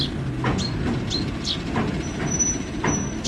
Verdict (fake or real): real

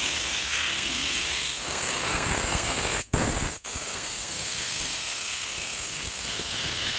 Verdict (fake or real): fake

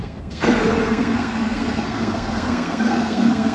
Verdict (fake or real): fake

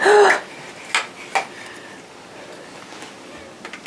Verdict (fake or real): real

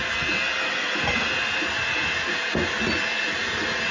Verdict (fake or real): real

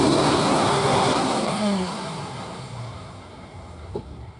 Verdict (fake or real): fake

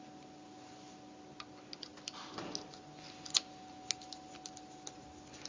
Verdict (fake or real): real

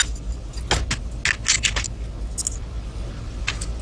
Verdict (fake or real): real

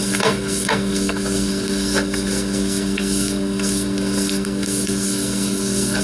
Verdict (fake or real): fake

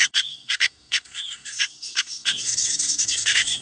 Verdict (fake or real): fake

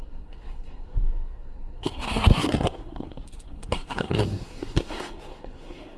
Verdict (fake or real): fake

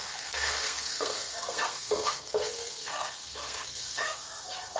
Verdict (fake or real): fake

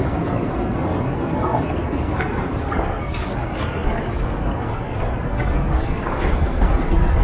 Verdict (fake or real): fake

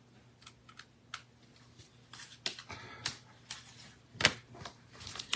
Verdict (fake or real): real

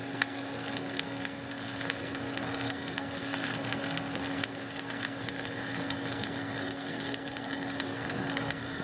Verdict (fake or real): fake